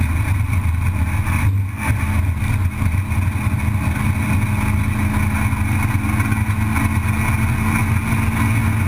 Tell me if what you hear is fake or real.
real